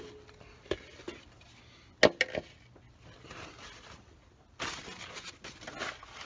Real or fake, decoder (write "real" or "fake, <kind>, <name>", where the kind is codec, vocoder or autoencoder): real